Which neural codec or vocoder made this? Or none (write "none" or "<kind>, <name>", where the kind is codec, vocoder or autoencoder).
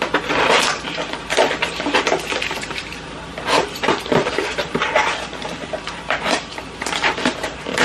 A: vocoder, BigVGAN v2